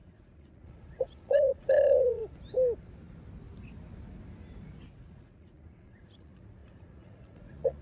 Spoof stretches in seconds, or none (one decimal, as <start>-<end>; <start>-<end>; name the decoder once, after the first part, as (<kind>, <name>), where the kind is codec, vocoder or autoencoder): 0.0-2.2 (vocoder, Vocos); 4.9-7.8